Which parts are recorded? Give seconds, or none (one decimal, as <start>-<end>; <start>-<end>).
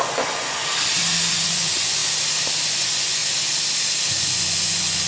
0.6-1.3; 2.0-2.7; 3.2-4.0